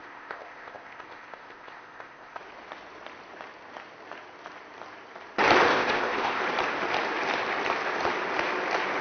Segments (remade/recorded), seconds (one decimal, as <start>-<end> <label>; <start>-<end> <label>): 0.0-2.4 remade; 2.4-5.7 recorded; 5.7-6.4 remade; 6.4-9.0 recorded